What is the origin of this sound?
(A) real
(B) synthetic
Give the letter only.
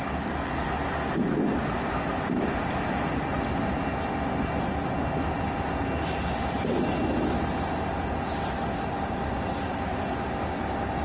A